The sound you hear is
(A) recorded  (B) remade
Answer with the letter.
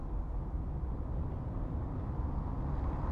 A